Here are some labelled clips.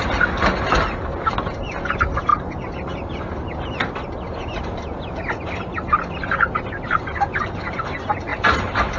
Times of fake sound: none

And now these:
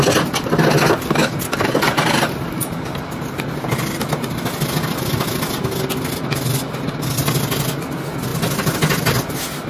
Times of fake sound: none

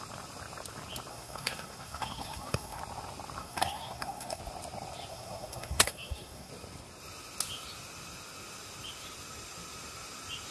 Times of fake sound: 1.1-2.8 (codec, SNAC); 3.4-4.4; 5.1-6.5

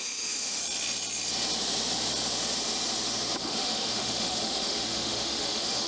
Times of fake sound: 0.0-0.6 (autoencoder, DAC-VAE); 3.4-5.9

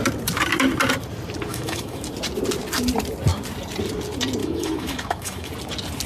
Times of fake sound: 1.5-2.0 (autoencoder, DAC-VAE); 4.4-5.5